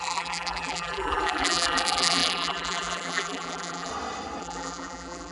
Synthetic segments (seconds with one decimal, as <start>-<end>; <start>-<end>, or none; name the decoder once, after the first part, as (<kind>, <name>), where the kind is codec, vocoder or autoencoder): 0.0-3.9 (vocoder, BigVGAN v2); 4.4-5.3